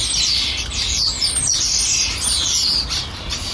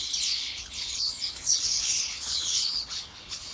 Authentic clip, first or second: first